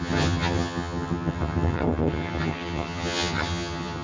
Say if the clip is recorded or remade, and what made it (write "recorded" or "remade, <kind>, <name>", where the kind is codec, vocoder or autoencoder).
remade, vocoder, HiFi-GAN